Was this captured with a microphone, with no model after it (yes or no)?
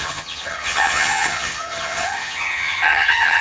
no